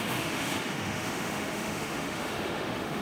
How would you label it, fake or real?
fake